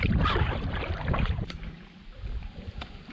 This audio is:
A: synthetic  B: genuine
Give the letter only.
A